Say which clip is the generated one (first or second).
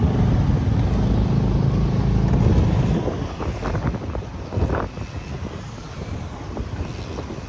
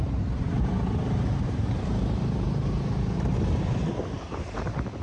second